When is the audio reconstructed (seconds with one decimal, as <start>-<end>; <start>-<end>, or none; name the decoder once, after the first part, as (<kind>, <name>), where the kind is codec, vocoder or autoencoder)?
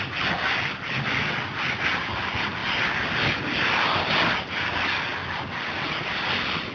none